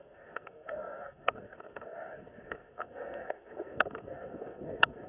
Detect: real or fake fake